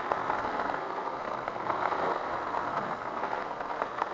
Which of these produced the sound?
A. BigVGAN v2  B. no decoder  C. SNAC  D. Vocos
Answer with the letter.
C